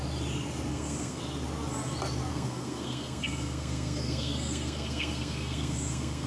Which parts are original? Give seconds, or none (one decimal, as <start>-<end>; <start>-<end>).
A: 0.0-0.7; 1.2-2.3